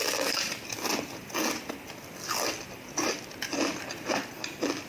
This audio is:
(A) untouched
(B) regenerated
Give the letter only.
A